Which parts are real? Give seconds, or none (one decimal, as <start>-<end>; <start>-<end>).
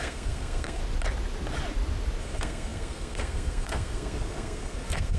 0.8-2.2